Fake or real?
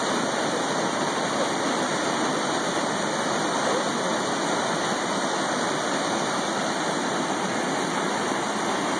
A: real